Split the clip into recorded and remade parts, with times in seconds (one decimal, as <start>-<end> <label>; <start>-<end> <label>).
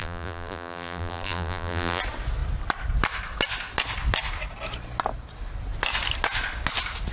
0.0-2.0 remade; 2.0-7.1 recorded